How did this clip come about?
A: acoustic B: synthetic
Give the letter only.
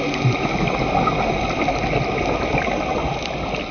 A